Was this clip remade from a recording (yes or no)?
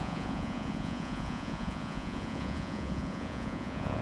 yes